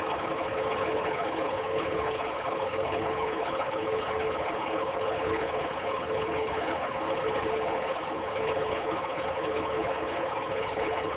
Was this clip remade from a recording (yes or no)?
yes